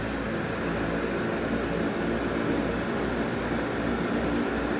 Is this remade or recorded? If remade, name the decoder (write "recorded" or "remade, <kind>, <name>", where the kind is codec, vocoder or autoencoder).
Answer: recorded